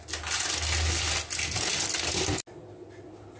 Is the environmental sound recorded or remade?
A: recorded